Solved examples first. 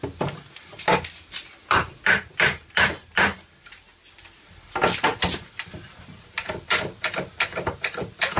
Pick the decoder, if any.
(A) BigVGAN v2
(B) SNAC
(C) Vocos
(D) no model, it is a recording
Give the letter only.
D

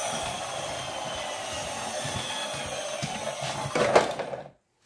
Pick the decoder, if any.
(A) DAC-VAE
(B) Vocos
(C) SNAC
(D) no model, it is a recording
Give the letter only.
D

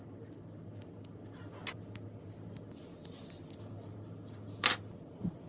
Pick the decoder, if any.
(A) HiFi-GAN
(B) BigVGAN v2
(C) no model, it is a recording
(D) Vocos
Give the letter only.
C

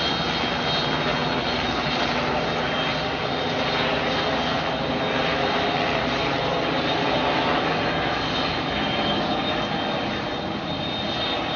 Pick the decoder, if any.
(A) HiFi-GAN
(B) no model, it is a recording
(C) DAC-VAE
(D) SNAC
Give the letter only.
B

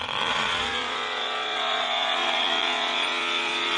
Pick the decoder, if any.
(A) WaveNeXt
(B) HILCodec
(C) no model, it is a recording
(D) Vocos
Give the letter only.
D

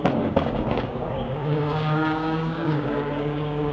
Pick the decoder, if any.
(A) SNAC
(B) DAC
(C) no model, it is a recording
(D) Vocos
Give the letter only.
B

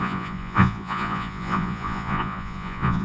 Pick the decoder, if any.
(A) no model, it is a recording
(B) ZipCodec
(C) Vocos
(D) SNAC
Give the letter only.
C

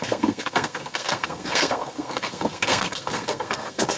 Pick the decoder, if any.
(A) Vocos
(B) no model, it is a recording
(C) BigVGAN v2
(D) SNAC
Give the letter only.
D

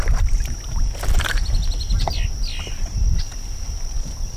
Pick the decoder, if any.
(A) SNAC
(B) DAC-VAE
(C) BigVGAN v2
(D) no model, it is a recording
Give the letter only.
D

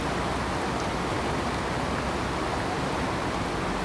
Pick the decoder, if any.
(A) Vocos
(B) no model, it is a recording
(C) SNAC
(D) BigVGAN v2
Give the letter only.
B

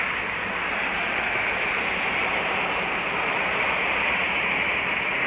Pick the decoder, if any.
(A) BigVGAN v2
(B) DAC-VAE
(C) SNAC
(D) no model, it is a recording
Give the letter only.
D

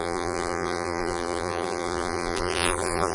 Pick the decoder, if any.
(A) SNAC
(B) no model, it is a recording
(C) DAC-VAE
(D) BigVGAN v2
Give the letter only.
D